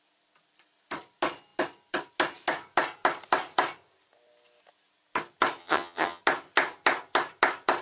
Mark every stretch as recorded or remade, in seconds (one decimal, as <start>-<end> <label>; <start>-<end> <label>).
0.0-5.6 recorded; 5.6-6.2 remade; 6.2-7.8 recorded